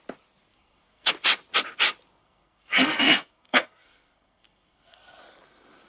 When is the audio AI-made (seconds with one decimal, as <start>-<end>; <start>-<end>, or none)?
0.5-1.1; 2.2-5.2